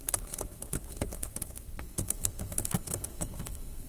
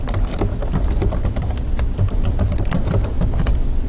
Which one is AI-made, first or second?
first